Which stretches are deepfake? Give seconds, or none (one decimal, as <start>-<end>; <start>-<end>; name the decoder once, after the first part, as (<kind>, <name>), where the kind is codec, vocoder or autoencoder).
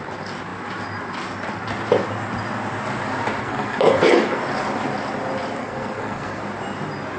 3.4-4.4 (codec, SNAC); 5.6-6.4